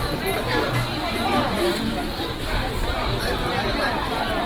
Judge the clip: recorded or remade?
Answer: recorded